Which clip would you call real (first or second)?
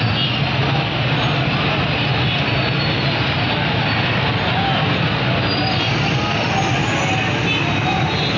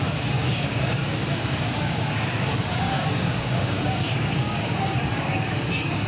first